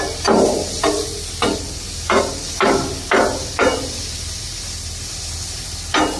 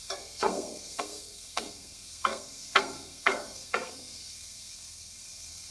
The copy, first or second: second